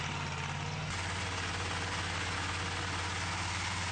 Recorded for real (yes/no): yes